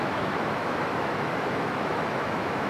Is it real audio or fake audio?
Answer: fake